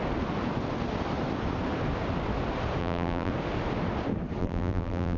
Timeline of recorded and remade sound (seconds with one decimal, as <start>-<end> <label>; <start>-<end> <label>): 0.0-2.8 recorded; 2.8-3.3 remade; 3.3-4.4 recorded; 4.4-5.2 remade